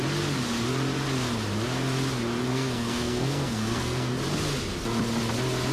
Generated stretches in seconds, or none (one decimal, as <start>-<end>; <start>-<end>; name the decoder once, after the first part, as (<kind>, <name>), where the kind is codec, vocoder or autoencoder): 2.5-4.1 (codec, SNAC)